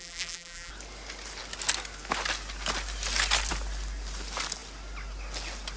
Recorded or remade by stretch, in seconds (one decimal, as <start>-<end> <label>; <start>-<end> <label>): 0.0-0.7 remade; 0.7-5.8 recorded